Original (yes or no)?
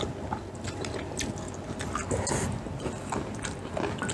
yes